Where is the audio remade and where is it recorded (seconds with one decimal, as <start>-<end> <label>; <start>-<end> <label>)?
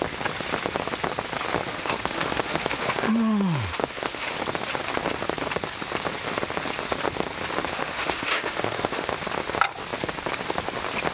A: 0.0-1.7 recorded; 1.7-4.4 remade; 4.4-7.7 recorded; 7.7-9.2 remade; 9.2-11.1 recorded